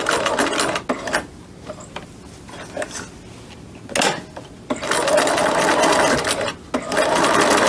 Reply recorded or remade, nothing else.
recorded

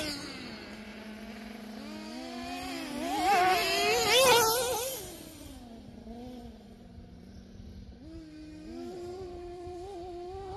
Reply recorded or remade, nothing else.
recorded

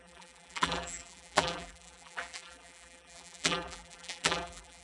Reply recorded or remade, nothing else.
remade